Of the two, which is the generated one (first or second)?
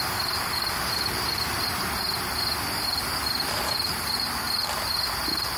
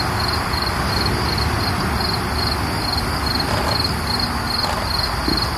first